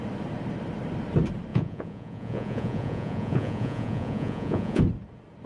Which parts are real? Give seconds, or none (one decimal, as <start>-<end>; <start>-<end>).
0.0-1.5; 4.8-5.5